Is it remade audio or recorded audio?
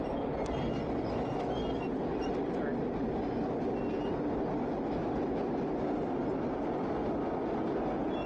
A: recorded